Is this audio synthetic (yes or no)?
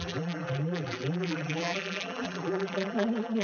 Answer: yes